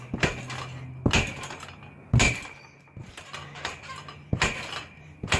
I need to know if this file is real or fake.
real